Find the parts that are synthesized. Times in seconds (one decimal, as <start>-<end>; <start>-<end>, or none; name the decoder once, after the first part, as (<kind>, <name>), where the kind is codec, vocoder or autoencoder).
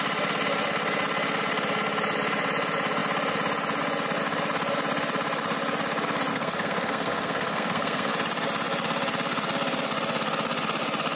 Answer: 6.3-8.1 (codec, SNAC)